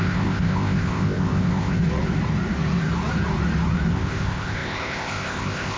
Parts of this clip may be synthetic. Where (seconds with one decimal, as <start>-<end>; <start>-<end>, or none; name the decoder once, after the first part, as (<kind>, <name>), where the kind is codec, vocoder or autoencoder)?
0.0-1.8 (codec, ZipCodec); 3.9-5.8